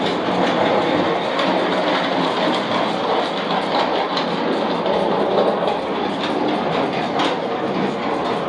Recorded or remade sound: recorded